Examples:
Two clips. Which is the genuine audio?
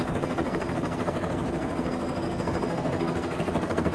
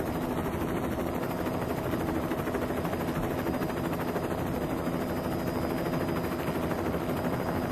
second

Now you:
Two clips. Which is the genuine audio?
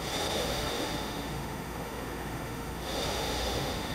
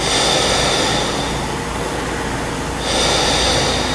second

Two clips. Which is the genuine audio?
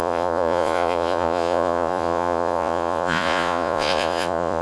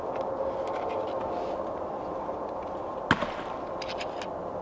second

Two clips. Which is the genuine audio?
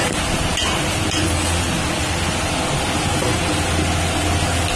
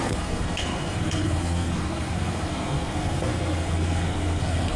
first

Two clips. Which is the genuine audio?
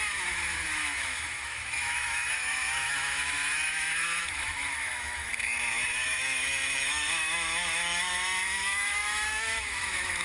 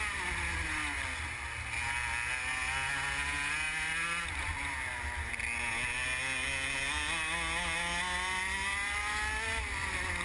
second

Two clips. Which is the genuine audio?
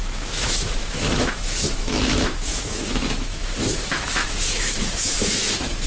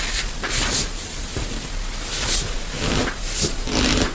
second